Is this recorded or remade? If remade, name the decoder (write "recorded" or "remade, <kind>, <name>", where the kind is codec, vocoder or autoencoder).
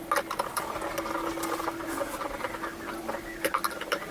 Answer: recorded